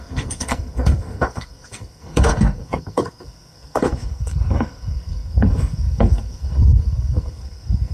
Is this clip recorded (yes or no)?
no